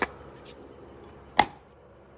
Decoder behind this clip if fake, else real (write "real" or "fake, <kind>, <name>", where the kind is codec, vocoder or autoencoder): real